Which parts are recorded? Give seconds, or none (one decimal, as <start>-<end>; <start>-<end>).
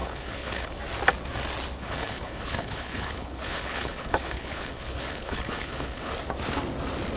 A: 0.7-1.8; 6.1-7.2